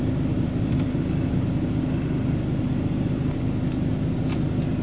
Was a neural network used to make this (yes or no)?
no